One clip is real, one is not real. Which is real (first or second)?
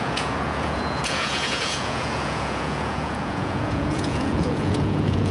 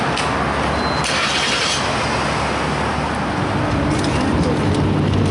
second